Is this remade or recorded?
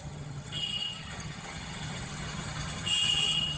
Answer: remade